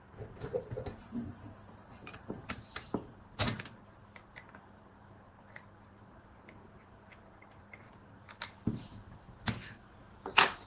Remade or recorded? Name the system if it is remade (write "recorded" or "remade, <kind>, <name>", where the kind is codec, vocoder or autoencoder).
remade, vocoder, BigVGAN v2